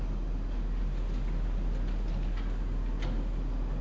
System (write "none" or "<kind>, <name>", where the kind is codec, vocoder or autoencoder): none